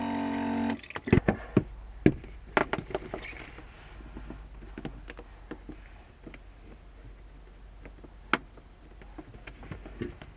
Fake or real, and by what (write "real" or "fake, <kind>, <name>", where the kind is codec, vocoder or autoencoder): real